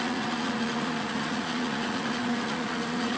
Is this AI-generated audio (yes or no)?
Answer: yes